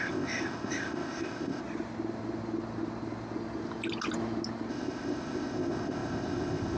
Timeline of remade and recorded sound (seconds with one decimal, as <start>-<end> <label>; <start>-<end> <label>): 0.0-1.6 remade; 1.6-4.7 recorded; 4.7-6.8 remade